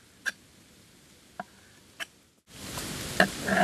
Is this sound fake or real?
real